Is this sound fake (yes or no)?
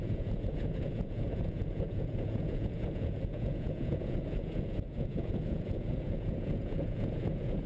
yes